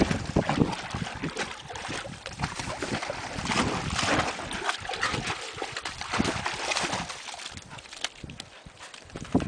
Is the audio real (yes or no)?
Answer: yes